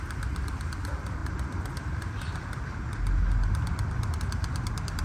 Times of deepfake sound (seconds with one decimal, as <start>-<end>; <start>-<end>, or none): none